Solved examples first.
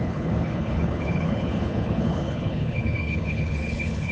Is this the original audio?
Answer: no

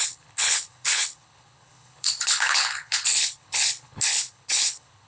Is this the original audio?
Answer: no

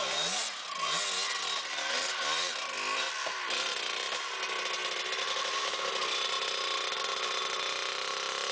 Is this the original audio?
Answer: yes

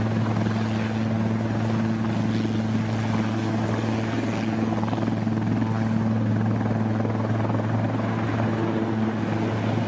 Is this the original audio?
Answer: yes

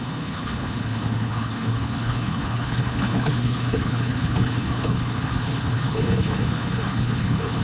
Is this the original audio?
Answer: no